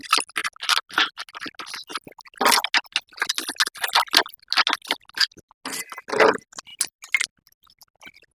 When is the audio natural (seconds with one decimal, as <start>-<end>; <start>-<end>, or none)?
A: 0.0-8.4